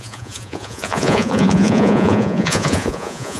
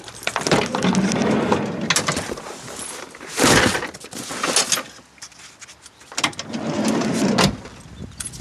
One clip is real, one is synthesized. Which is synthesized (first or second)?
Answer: first